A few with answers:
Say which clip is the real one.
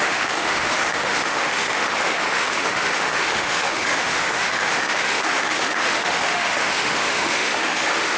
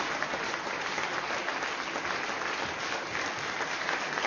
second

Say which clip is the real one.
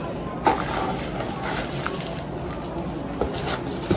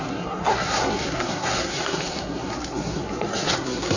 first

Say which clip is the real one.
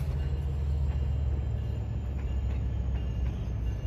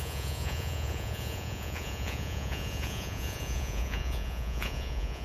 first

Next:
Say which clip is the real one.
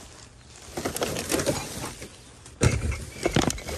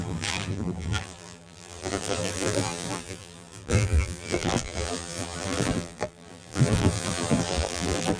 first